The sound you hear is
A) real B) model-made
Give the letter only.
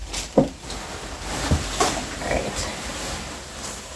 B